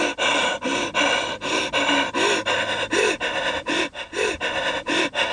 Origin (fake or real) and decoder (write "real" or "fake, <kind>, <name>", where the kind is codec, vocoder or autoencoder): real